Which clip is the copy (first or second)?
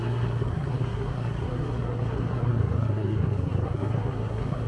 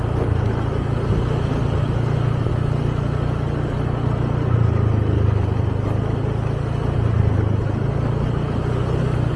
first